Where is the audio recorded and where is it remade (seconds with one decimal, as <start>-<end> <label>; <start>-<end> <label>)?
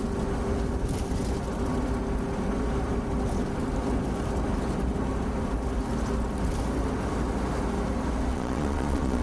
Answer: 0.0-8.3 recorded; 8.3-9.2 remade